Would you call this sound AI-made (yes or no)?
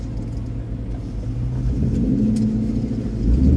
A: no